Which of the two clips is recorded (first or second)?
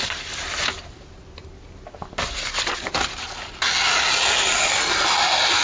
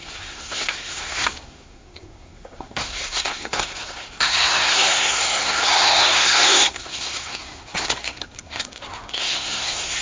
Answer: first